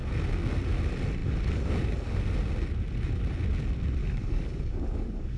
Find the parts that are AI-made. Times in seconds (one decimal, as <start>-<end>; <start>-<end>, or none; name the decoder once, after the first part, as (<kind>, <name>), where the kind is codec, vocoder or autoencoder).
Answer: 4.0-5.4 (codec, DAC)